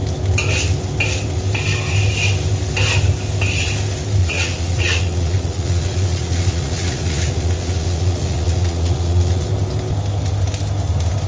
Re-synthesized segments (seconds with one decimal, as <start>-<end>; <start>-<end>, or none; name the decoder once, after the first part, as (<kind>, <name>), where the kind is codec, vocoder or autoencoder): 4.2-9.5 (vocoder, Vocos)